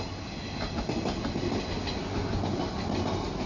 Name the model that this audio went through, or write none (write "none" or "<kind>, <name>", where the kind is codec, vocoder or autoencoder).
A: none